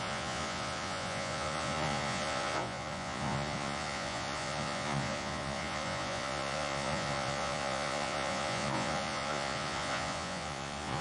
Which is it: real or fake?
fake